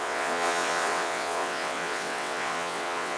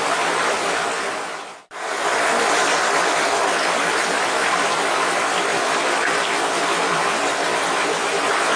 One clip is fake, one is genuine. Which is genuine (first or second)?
second